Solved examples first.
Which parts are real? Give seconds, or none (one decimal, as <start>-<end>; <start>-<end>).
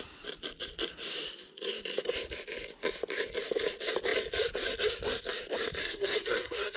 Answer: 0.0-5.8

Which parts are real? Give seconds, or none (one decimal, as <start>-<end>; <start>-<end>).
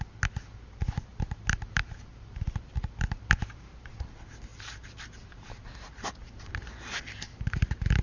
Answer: 0.0-1.1; 3.9-4.5; 6.5-8.0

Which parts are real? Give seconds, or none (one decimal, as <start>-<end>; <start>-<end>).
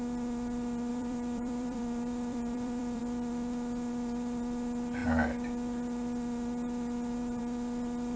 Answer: 0.0-0.9; 3.0-8.2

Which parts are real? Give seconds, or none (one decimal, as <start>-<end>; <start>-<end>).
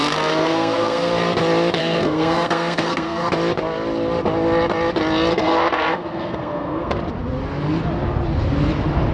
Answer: 1.1-1.8; 3.3-5.3; 6.9-9.1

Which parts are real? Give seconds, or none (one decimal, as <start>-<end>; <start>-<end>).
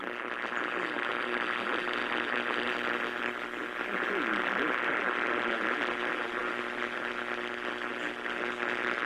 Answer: 0.0-9.1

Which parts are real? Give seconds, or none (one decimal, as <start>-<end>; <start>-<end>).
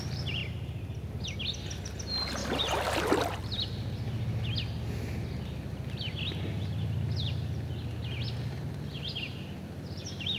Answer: 0.0-0.4; 1.1-2.4; 3.4-10.4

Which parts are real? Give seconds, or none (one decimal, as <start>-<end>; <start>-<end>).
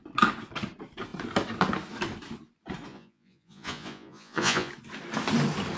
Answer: 0.0-2.9; 4.7-5.8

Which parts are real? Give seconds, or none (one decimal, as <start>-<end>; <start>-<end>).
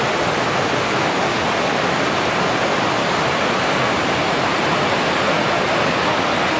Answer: 0.0-2.7; 4.5-6.6